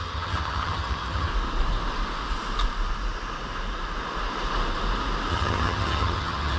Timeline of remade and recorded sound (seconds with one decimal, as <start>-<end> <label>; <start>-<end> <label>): 0.0-1.3 remade; 1.3-5.3 recorded; 5.3-6.6 remade